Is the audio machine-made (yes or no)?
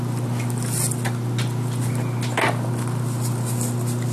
no